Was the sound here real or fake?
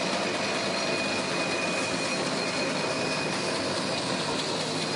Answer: real